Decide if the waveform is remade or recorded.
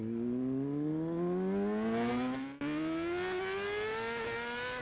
recorded